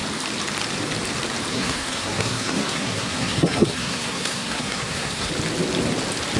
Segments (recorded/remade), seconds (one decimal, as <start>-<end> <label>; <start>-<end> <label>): 0.0-1.5 recorded; 1.5-5.3 remade; 5.3-6.4 recorded